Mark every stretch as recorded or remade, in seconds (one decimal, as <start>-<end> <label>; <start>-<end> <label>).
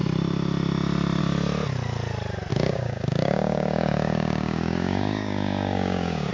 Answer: 0.0-2.5 recorded; 2.5-6.3 remade